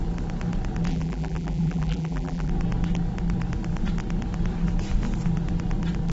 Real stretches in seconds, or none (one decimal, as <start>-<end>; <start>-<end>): 0.0-0.9; 2.5-6.1

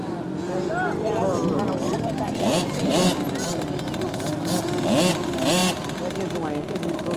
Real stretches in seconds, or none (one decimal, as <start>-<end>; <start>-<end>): 2.9-5.1

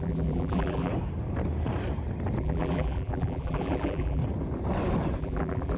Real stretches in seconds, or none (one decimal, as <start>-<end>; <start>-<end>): 0.9-2.4; 4.2-5.2

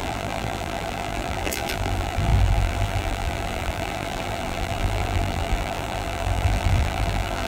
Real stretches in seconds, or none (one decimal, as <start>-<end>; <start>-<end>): none

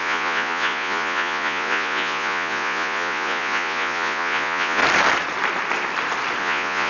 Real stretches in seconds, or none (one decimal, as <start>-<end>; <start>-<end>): 4.8-6.4

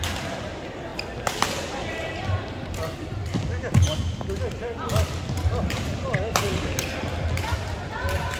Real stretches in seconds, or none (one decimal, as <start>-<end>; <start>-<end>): 0.0-8.4

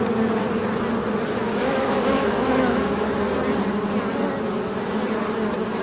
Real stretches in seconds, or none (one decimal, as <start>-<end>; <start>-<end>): 0.0-1.4; 3.1-5.8

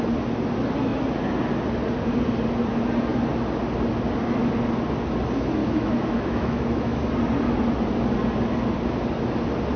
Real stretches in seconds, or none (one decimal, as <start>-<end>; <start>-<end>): 0.0-5.6; 7.1-9.8